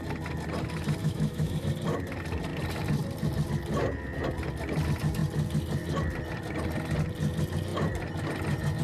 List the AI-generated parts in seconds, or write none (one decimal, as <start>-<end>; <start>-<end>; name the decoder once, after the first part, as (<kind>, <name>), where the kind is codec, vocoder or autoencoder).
1.0-1.7 (autoencoder, DAC-VAE)